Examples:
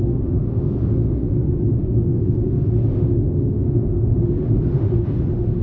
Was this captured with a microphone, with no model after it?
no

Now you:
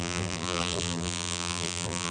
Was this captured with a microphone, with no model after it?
no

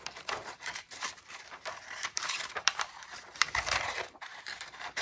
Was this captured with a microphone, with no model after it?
no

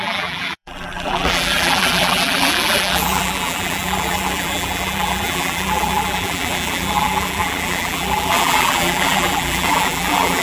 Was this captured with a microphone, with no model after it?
no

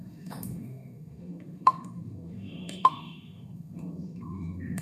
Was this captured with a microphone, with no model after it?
no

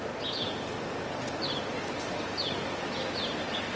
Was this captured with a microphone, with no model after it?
yes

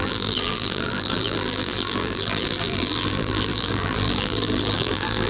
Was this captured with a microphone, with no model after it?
no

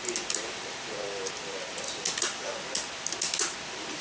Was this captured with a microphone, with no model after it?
yes